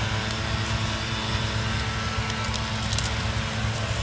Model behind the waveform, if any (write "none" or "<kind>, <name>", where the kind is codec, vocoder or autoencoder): none